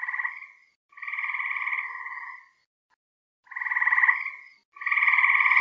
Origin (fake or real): fake